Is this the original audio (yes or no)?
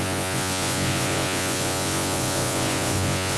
no